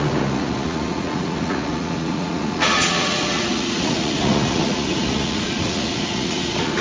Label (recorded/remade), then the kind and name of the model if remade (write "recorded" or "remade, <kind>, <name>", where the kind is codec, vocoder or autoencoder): remade, vocoder, Vocos